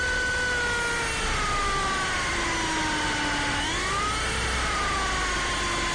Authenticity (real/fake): real